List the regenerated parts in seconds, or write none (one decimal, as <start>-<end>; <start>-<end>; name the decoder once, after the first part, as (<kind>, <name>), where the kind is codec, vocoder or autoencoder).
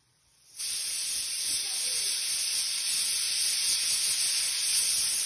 1.0-4.2 (vocoder, BigVGAN v2)